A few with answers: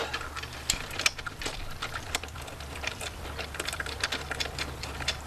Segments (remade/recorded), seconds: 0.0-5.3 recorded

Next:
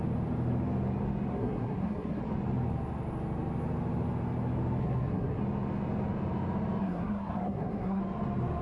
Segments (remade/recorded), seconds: 0.0-1.3 recorded; 1.3-2.2 remade; 2.2-4.8 recorded; 4.8-5.4 remade; 5.4-6.8 recorded; 6.8-8.0 remade; 8.0-8.6 recorded

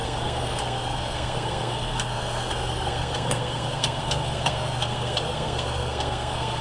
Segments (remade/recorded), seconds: 0.0-6.6 remade

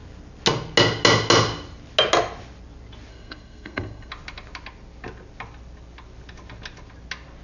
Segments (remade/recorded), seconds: 0.0-3.1 recorded; 3.1-4.1 remade; 4.1-7.4 recorded

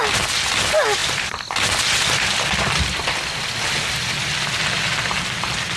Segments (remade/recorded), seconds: 0.0-5.8 recorded

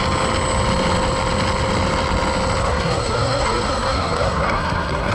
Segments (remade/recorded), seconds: 0.0-2.6 recorded; 2.6-5.1 remade

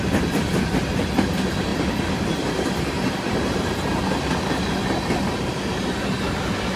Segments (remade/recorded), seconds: 0.0-6.8 recorded